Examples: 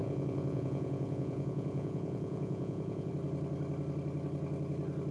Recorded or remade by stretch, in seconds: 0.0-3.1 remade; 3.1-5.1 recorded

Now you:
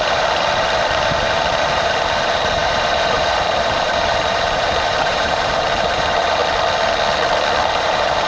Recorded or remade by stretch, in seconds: 0.0-6.4 remade; 6.4-7.7 recorded; 7.7-8.3 remade